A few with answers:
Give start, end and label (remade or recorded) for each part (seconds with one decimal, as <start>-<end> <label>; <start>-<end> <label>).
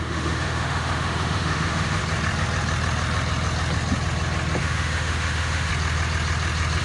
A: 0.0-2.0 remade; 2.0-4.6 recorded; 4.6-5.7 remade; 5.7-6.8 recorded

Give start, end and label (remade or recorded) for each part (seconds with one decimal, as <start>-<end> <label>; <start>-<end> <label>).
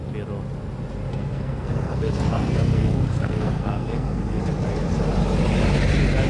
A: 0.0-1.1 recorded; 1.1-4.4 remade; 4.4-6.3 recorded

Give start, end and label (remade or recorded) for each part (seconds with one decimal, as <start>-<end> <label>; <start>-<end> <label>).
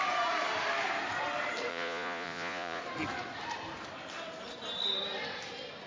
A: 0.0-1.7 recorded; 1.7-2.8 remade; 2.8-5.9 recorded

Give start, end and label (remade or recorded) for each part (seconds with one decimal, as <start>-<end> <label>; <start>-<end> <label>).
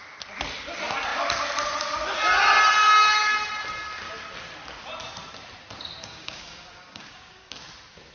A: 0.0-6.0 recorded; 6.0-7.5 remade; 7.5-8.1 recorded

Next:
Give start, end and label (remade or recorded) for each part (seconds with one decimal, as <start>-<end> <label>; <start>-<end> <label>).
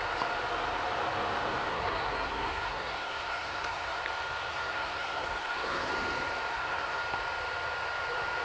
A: 0.0-1.7 recorded; 1.7-4.0 remade; 4.0-4.5 recorded; 4.5-5.9 remade; 5.9-6.5 recorded; 6.5-7.0 remade; 7.0-8.4 recorded